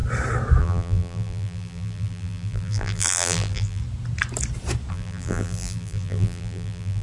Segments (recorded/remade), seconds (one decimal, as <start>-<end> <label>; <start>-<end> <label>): 0.0-0.6 recorded; 0.6-3.8 remade; 3.8-4.9 recorded; 4.9-7.0 remade